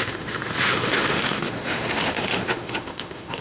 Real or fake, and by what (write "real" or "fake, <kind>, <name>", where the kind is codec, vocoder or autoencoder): fake, autoencoder, DAC-VAE